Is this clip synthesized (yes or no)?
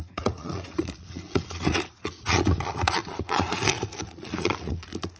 yes